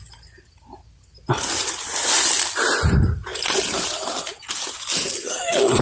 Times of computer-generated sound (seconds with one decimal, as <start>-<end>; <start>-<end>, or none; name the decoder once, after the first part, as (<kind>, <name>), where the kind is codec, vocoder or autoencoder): none